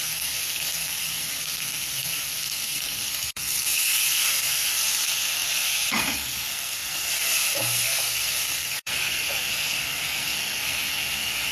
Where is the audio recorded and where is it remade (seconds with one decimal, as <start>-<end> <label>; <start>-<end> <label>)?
0.0-11.5 remade